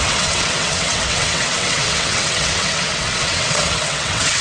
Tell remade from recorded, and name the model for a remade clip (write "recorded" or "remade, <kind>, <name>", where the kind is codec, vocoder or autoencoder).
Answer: remade, vocoder, WaveNeXt